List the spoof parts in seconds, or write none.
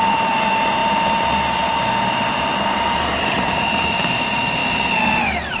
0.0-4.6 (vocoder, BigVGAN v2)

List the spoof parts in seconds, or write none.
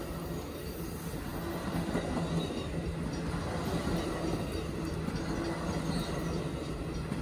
none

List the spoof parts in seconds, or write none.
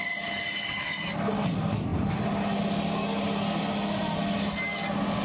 none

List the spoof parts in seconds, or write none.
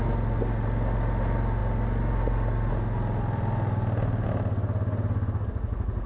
none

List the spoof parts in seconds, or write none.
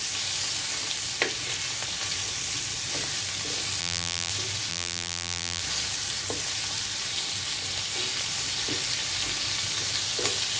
3.8-4.3 (vocoder, BigVGAN v2); 4.7-5.6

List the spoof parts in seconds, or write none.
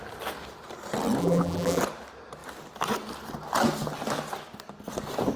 1.2-1.8 (vocoder, BigVGAN v2)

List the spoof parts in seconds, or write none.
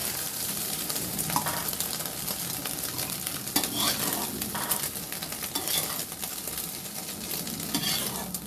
0.0-1.2 (vocoder, BigVGAN v2)